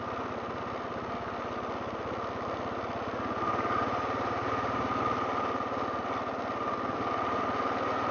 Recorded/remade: recorded